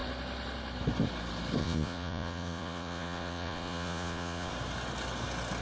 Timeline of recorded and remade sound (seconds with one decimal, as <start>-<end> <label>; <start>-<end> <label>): 0.0-1.6 recorded; 1.6-4.5 remade; 4.5-5.6 recorded